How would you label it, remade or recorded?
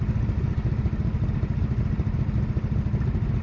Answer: recorded